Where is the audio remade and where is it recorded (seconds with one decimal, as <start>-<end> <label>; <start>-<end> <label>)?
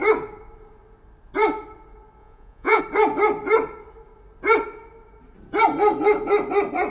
0.0-2.2 recorded; 2.2-2.8 remade; 2.8-6.9 recorded